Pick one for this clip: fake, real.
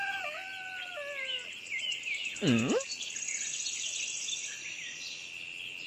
real